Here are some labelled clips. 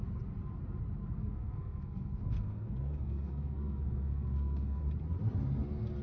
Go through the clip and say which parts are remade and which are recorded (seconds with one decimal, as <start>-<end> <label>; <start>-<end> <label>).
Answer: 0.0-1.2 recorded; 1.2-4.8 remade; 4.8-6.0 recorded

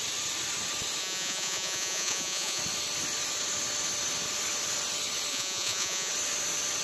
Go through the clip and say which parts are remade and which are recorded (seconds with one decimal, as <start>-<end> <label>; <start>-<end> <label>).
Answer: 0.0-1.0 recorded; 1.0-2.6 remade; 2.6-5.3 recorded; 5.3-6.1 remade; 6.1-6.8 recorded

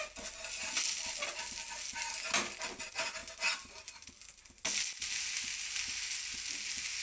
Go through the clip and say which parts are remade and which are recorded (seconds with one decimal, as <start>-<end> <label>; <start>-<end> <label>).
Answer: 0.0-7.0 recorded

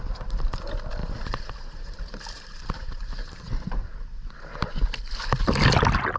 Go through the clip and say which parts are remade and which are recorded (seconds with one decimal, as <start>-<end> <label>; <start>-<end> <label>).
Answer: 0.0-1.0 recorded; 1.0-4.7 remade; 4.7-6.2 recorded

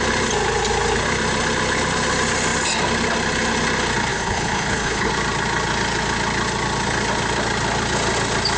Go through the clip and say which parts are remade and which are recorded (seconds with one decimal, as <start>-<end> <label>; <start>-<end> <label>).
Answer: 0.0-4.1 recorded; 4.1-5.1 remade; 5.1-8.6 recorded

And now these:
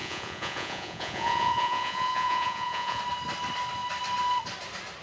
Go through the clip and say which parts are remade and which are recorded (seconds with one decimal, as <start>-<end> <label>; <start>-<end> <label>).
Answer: 0.0-3.0 remade; 3.0-5.0 recorded